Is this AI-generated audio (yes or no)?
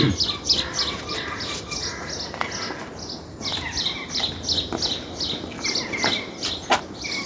no